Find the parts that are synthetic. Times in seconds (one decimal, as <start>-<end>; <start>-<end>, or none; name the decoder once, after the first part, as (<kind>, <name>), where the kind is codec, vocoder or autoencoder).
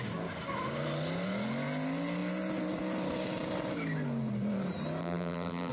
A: 5.0-5.7 (vocoder, BigVGAN v2)